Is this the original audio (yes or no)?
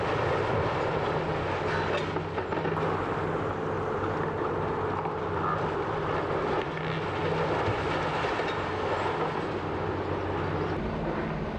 yes